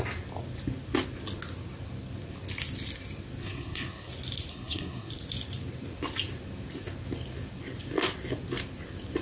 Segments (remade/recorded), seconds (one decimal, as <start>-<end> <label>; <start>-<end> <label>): 0.0-3.4 recorded; 3.4-4.1 remade; 4.1-4.5 recorded; 4.5-5.1 remade; 5.1-9.2 recorded